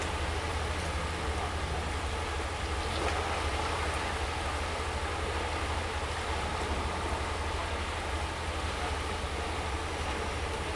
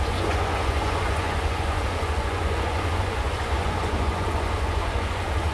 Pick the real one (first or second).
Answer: first